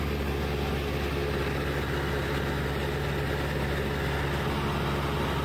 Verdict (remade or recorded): recorded